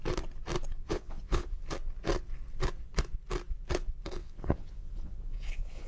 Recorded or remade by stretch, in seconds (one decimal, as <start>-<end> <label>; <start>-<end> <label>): 0.0-0.8 recorded; 0.8-1.6 remade; 1.6-4.2 recorded; 4.2-5.9 remade